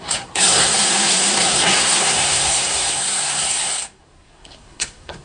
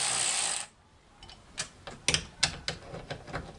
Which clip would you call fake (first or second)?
first